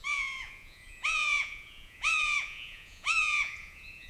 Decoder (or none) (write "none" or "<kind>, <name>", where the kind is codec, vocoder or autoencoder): vocoder, Vocos